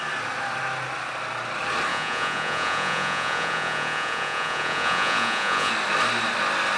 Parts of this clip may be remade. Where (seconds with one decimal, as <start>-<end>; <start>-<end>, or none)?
1.9-5.7